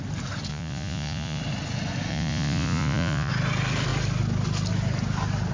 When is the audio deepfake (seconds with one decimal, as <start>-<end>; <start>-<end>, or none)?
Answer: 0.5-1.4; 2.1-3.3